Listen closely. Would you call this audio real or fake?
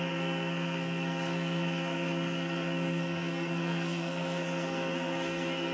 fake